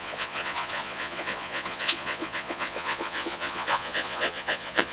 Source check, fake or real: fake